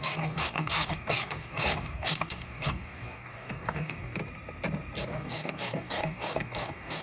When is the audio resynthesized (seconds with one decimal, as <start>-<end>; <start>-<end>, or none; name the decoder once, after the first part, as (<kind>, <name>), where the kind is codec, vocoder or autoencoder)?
0.0-4.2 (codec, DAC); 5.0-7.0